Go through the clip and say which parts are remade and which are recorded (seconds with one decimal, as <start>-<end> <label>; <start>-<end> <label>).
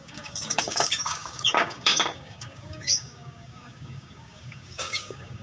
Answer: 0.0-5.4 remade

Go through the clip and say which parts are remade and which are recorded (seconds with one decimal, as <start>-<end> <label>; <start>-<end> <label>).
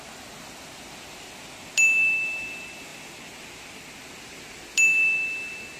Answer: 0.0-5.8 recorded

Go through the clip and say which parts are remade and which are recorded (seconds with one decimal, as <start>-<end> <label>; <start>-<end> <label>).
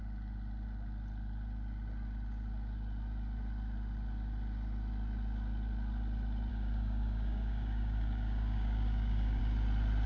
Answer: 0.0-6.5 recorded; 6.5-9.4 remade; 9.4-10.1 recorded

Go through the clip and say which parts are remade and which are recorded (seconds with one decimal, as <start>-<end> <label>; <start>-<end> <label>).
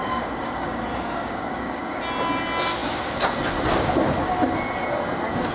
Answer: 0.0-2.0 remade; 2.0-5.5 recorded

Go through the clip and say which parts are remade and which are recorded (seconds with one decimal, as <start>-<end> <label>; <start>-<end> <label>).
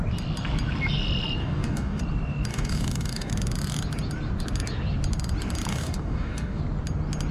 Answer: 0.0-1.4 recorded; 1.4-2.0 remade; 2.0-2.5 recorded; 2.5-3.3 remade; 3.3-5.7 recorded; 5.7-6.6 remade; 6.6-7.3 recorded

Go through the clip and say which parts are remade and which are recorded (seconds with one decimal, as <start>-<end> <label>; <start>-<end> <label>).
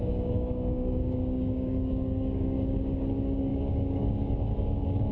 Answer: 0.0-5.1 remade